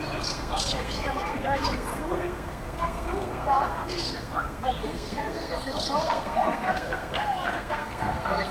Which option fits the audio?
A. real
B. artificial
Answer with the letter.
B